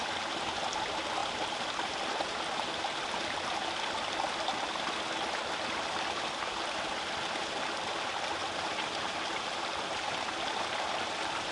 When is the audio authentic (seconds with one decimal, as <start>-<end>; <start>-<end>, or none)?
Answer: 0.0-11.5